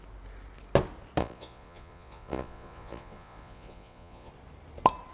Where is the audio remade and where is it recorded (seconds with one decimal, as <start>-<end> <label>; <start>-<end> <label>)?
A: 0.0-1.2 recorded; 1.2-4.3 remade; 4.3-5.1 recorded